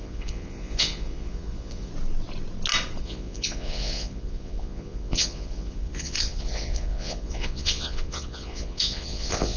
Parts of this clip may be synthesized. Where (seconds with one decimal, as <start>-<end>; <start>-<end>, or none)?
0.0-1.9; 3.0-9.6